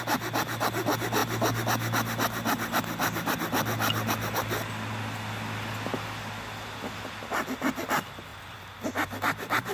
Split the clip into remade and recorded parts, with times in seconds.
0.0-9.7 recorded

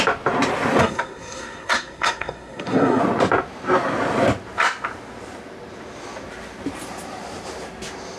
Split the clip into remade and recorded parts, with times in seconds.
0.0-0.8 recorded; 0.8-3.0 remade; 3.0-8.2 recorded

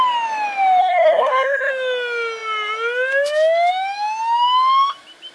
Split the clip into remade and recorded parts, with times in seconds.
0.0-0.8 recorded; 0.8-1.7 remade; 1.7-5.3 recorded